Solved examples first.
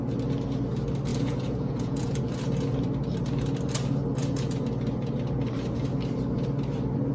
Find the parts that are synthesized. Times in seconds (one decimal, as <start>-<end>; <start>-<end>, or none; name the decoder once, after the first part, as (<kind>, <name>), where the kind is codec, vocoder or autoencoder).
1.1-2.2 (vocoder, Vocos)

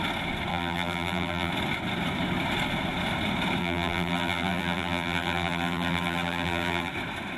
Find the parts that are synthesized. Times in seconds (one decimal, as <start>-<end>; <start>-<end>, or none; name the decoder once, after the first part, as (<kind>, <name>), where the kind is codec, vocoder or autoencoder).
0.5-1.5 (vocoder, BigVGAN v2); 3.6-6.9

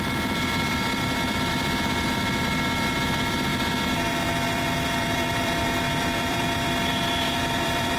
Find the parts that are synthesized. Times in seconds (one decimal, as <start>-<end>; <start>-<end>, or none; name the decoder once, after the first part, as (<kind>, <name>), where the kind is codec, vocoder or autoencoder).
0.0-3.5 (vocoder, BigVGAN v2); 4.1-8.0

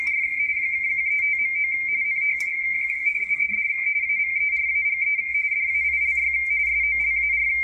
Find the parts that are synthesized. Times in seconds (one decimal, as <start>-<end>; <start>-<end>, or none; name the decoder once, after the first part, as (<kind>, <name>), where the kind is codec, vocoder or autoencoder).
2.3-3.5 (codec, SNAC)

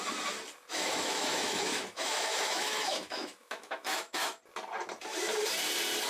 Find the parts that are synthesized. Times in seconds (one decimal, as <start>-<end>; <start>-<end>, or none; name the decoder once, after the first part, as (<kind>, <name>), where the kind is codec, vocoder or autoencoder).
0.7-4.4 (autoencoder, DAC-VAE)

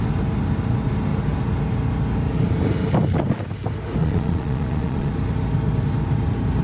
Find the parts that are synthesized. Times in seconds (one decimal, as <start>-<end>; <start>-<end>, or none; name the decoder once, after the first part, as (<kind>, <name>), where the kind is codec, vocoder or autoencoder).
4.0-5.1 (vocoder, Vocos)

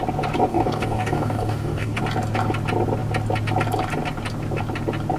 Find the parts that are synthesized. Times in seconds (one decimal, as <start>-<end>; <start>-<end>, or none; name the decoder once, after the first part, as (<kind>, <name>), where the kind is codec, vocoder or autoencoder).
0.5-2.0 (codec, DAC)